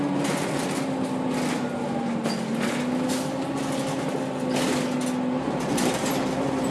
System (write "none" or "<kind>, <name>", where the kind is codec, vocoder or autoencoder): none